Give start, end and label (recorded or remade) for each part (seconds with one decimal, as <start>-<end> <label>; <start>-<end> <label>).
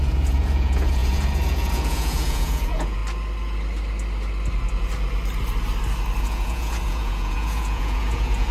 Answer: 0.0-3.0 remade; 3.0-6.2 recorded; 6.2-8.5 remade